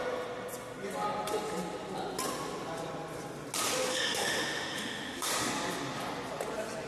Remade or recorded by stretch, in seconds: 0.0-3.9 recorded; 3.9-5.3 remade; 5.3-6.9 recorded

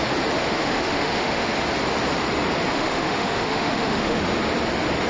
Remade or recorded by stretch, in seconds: 0.0-0.4 recorded; 0.4-1.5 remade; 1.5-2.7 recorded; 2.7-4.2 remade; 4.2-5.1 recorded

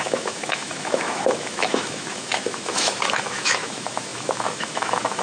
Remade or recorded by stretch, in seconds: 0.0-5.2 remade

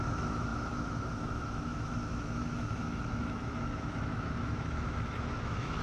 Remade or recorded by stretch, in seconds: 0.0-5.8 remade

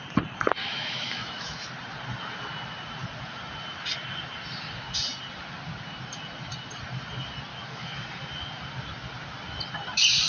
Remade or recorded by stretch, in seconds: 0.0-0.6 recorded; 0.6-1.7 remade; 1.7-7.5 recorded; 7.5-8.1 remade; 8.1-10.3 recorded

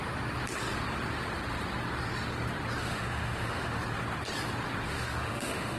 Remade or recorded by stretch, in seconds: 0.0-2.8 recorded; 2.8-3.8 remade; 3.8-4.9 recorded; 4.9-5.8 remade

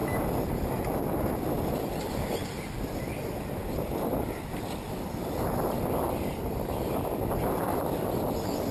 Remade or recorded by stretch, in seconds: 0.0-8.7 recorded

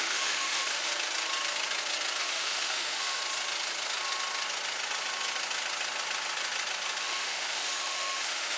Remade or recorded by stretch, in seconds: 0.0-0.9 remade; 0.9-2.2 recorded; 2.2-3.2 remade; 3.2-7.0 recorded; 7.0-8.6 remade